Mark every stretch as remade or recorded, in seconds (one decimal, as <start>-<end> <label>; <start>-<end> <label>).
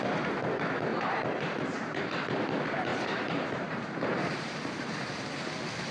0.0-0.9 recorded; 0.9-2.0 remade; 2.0-2.9 recorded; 2.9-4.9 remade; 4.9-5.9 recorded